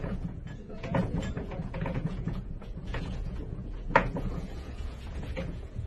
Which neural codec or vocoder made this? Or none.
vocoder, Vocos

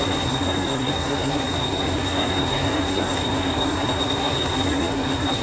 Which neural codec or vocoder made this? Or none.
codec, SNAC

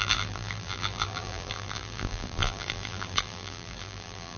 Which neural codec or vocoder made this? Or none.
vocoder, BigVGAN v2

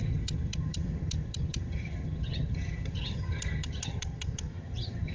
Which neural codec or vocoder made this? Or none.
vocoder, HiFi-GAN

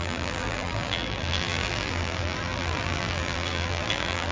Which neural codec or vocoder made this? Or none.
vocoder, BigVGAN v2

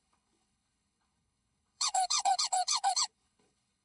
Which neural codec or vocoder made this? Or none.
codec, HILCodec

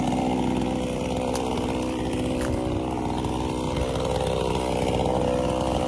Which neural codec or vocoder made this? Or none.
vocoder, BigVGAN v2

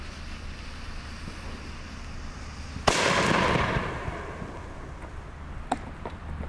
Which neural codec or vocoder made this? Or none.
none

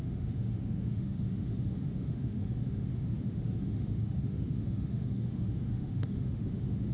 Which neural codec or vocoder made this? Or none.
autoencoder, DAC-VAE